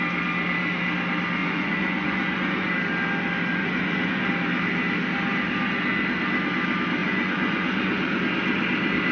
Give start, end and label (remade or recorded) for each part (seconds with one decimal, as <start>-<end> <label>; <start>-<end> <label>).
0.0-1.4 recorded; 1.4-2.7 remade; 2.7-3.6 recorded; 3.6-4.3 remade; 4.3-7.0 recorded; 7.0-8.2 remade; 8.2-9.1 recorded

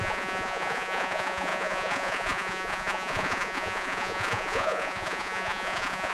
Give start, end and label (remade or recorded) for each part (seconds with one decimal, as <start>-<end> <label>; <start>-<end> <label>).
0.0-6.1 remade

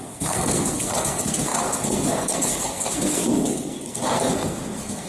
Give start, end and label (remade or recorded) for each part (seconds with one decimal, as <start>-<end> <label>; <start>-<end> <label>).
0.0-5.1 remade

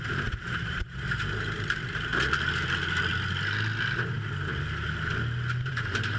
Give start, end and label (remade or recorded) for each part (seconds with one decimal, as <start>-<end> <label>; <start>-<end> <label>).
0.0-2.1 remade; 2.1-5.7 recorded; 5.7-6.2 remade

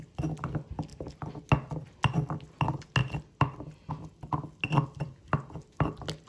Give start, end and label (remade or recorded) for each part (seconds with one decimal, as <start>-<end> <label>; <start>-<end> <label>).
0.0-3.0 recorded; 3.0-3.9 remade; 3.9-6.3 recorded

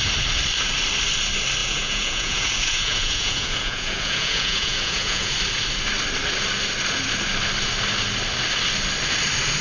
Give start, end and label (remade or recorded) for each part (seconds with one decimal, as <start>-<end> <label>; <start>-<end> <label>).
0.0-1.6 recorded; 1.6-5.3 remade; 5.3-9.6 recorded

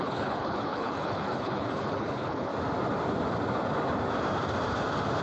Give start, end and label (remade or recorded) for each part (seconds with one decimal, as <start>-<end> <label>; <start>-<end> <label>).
0.0-2.5 remade; 2.5-5.2 recorded